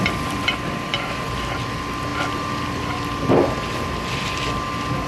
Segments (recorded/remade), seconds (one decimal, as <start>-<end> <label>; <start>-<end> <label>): 0.0-5.1 recorded